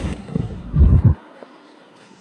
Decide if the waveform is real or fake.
fake